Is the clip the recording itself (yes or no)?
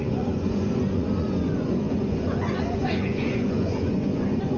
no